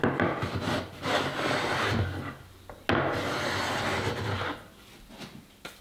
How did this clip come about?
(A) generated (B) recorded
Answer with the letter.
B